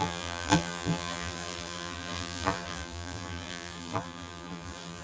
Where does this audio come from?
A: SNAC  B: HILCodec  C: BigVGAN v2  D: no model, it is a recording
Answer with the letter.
C